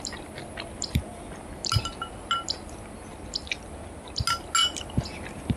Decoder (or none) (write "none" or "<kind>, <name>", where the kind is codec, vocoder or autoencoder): none